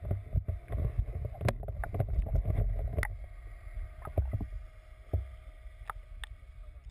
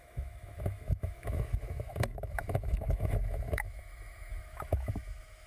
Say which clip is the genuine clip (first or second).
first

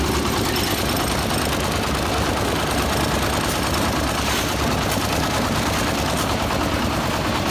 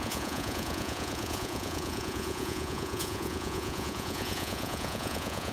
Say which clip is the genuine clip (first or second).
first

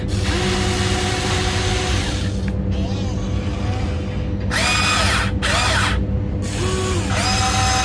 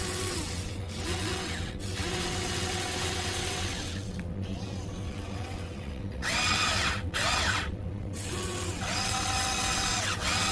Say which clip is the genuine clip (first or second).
first